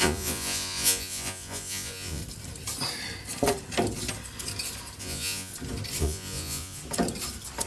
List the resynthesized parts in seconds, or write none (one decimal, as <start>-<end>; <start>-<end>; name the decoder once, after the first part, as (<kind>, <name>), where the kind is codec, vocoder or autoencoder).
0.0-2.2 (vocoder, Vocos); 5.0-5.5; 6.0-6.8